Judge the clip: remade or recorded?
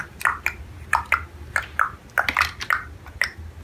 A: recorded